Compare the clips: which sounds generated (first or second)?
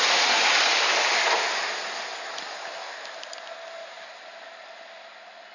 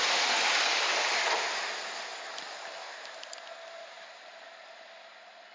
second